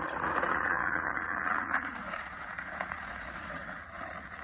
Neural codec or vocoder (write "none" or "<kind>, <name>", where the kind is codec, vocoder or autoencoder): vocoder, Vocos